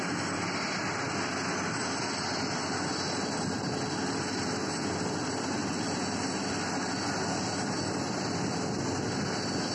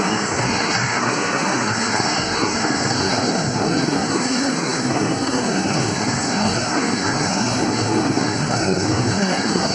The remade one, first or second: second